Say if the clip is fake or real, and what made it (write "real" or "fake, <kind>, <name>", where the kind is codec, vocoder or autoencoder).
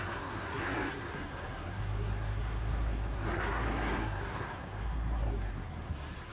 fake, codec, SNAC